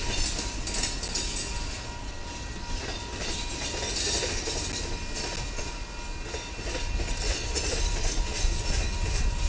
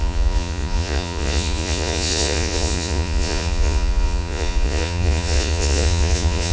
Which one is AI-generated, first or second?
second